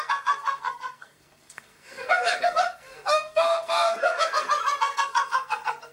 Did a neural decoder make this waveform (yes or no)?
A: yes